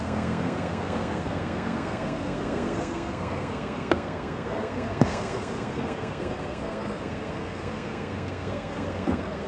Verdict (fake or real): fake